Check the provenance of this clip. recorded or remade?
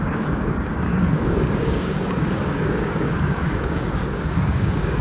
remade